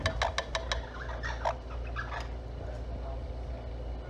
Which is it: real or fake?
real